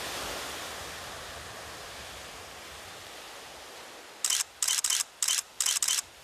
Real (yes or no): yes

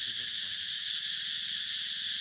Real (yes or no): no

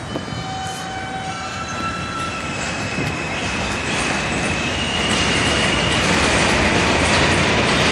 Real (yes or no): yes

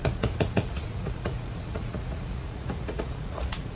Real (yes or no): no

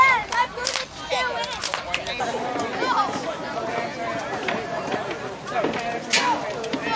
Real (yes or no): yes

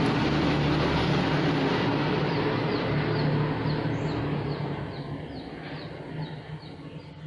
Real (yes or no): yes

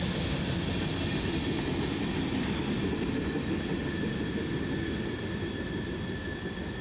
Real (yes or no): yes